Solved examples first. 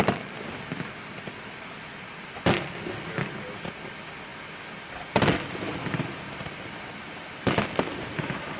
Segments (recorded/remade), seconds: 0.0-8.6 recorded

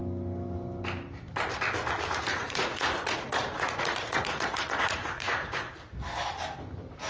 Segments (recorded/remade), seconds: 0.0-2.3 recorded; 2.3-5.7 remade; 5.7-7.1 recorded

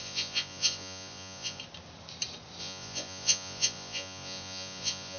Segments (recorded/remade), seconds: 0.0-1.6 remade; 1.6-2.6 recorded; 2.6-5.2 remade